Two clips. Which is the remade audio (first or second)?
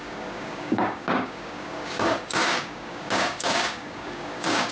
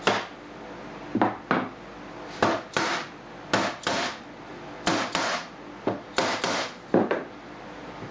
first